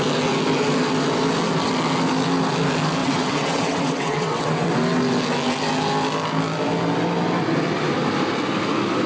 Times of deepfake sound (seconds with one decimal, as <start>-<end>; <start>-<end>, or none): 3.0-4.7

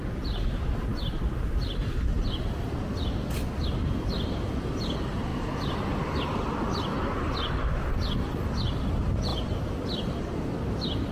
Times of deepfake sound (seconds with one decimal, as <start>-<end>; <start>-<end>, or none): none

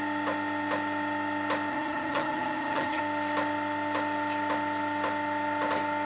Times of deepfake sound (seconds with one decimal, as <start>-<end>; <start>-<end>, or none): 1.7-3.0

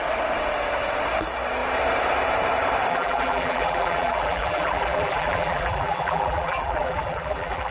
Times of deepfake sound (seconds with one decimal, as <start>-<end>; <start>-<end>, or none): 2.9-7.7

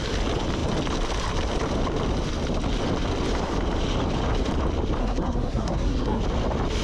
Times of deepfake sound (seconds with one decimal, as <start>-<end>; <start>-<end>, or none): 5.0-6.2